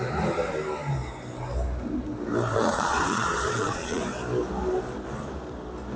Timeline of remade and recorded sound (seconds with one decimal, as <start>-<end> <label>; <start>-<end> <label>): 0.0-2.5 recorded; 2.5-4.0 remade; 4.0-6.0 recorded